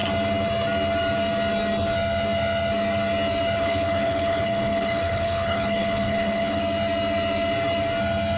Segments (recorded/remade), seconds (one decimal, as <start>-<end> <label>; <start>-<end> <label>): 0.0-3.6 recorded; 3.6-6.6 remade; 6.6-8.4 recorded